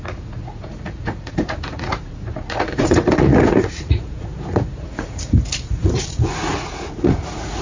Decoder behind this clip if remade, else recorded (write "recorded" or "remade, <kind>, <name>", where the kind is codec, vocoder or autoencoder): remade, vocoder, Vocos